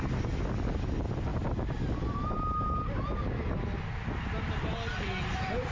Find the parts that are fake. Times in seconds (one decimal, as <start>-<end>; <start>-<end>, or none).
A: none